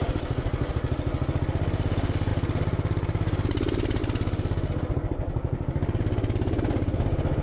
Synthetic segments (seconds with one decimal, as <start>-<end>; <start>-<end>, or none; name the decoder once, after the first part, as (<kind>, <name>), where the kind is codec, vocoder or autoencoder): 2.3-4.0 (vocoder, BigVGAN v2)